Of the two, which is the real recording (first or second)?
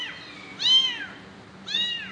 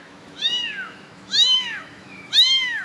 first